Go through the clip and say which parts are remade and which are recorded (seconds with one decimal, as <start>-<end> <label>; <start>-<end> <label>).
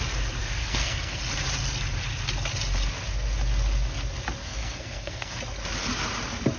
0.0-0.4 recorded; 0.4-1.2 remade; 1.2-4.4 recorded; 4.4-5.4 remade; 5.4-6.6 recorded